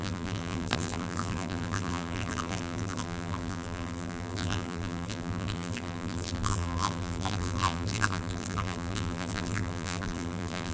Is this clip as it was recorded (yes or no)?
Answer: no